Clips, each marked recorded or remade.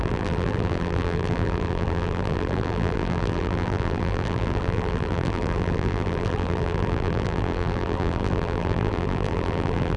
remade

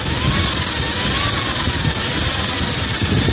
recorded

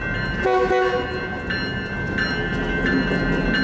recorded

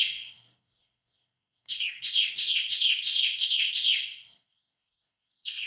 remade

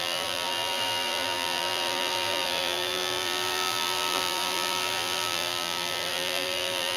remade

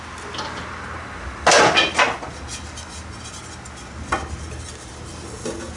recorded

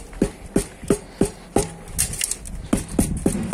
recorded